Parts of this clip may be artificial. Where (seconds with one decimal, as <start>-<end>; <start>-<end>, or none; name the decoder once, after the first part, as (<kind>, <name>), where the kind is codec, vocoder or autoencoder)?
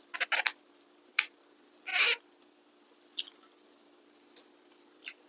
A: 0.0-1.9 (vocoder, BigVGAN v2); 3.7-5.3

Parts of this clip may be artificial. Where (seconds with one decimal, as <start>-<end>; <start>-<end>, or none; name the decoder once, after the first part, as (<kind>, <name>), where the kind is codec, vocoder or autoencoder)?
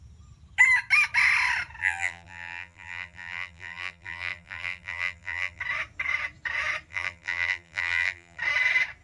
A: 1.8-5.6 (vocoder, BigVGAN v2); 6.9-8.4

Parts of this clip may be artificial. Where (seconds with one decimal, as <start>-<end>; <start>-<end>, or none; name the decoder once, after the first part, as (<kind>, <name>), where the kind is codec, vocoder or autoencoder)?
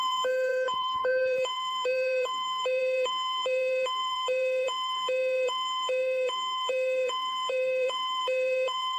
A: 0.0-9.0 (vocoder, BigVGAN v2)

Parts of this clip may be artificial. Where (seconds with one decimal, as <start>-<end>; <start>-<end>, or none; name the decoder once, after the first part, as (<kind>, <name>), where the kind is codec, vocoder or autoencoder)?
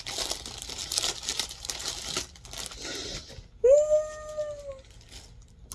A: 1.3-1.9 (vocoder, BigVGAN v2)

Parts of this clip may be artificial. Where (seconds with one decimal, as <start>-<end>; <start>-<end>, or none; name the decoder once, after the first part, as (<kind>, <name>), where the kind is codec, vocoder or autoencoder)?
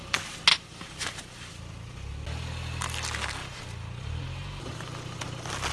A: 0.5-1.6 (vocoder, BigVGAN v2); 3.4-4.6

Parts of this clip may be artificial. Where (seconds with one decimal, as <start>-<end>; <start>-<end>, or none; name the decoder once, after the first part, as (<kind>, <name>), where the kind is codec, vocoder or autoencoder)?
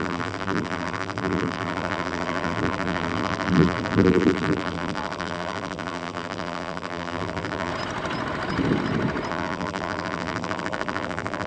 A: 0.0-7.7 (vocoder, BigVGAN v2); 9.3-11.5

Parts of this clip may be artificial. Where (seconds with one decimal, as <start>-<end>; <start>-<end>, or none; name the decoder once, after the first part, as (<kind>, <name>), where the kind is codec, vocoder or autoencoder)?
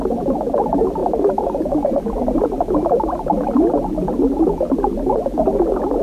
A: none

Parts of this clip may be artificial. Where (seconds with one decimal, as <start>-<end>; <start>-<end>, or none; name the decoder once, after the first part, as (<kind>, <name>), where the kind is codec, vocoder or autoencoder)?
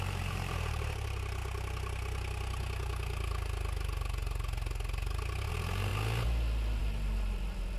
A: 0.0-1.4 (vocoder, BigVGAN v2); 5.5-5.9; 6.8-7.8